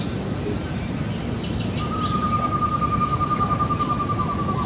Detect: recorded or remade recorded